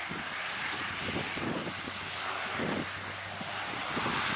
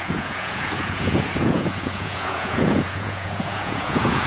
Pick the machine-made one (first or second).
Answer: second